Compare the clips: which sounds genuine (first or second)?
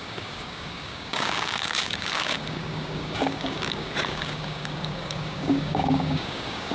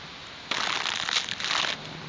second